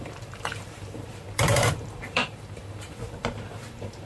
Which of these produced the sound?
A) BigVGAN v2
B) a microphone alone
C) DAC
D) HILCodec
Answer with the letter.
A